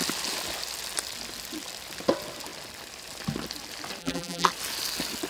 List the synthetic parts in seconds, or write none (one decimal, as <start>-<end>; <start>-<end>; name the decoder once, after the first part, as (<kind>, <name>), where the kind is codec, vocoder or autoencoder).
4.0-4.5 (vocoder, BigVGAN v2)